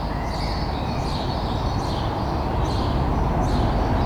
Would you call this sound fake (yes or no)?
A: no